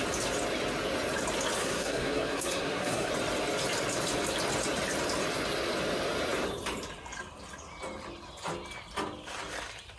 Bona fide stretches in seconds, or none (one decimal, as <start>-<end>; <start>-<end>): 0.0-1.6; 3.1-10.0

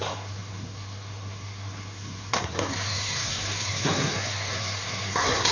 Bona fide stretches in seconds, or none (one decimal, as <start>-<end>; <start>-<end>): none

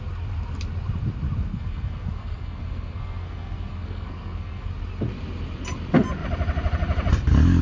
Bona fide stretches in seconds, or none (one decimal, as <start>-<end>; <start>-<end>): 0.0-1.5; 4.7-7.6

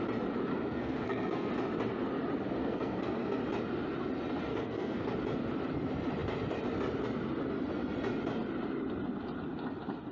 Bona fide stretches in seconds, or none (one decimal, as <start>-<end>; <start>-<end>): 0.0-0.5; 1.5-2.6; 3.4-4.5; 5.1-10.1

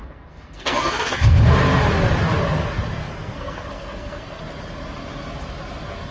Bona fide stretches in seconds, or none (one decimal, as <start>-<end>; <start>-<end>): 1.4-3.0; 4.4-6.1